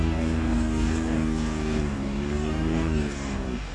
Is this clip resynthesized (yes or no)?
yes